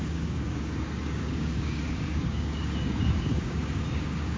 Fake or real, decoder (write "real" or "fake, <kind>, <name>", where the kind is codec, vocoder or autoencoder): fake, codec, DAC